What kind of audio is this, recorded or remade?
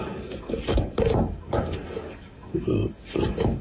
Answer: remade